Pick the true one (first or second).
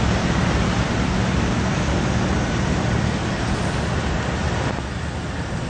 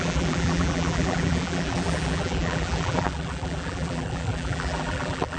first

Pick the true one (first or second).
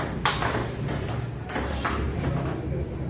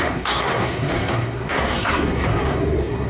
first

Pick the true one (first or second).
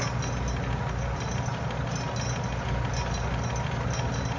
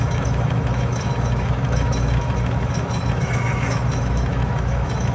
first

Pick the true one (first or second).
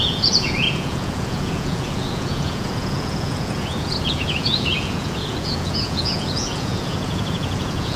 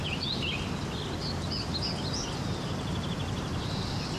second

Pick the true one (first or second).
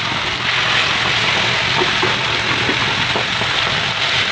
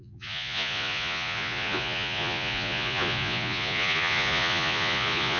first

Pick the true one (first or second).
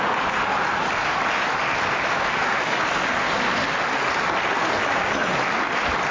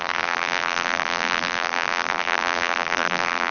first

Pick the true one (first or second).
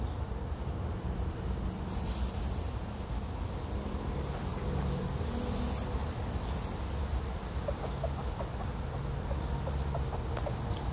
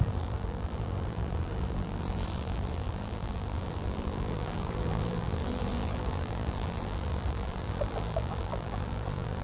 first